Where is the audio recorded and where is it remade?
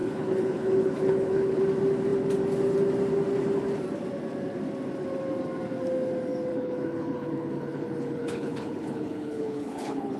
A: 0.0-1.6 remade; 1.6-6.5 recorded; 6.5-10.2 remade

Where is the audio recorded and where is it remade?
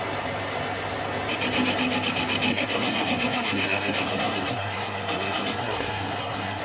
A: 0.0-2.5 recorded; 2.5-6.6 remade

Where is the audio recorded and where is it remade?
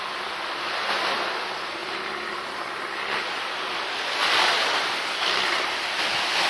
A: 0.0-6.5 recorded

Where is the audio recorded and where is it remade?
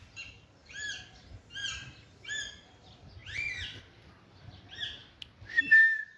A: 0.0-6.2 recorded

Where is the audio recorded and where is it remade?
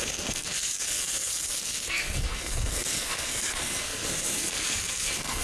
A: 0.0-5.4 remade